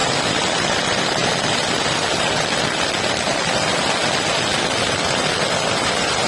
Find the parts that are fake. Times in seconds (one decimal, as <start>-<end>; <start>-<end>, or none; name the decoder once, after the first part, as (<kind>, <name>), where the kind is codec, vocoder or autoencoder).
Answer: none